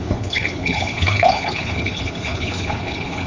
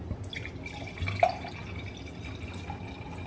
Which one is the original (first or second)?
second